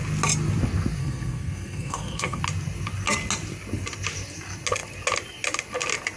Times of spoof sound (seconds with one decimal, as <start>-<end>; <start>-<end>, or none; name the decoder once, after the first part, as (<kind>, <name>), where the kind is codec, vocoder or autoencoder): 1.0-2.4 (codec, SNAC)